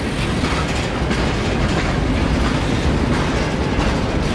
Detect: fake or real real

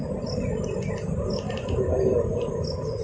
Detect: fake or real real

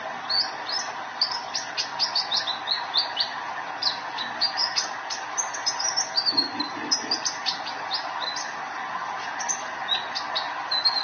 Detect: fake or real real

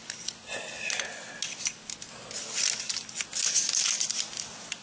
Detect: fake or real real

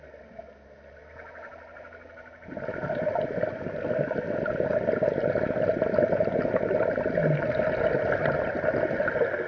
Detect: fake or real real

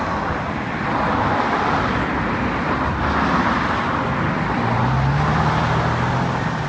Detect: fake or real real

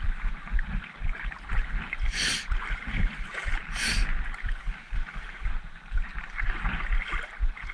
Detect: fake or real real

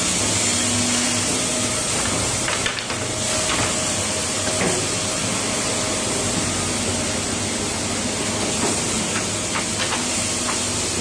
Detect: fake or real real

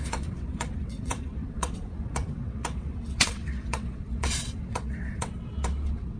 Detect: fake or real fake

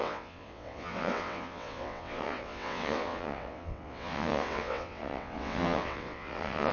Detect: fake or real fake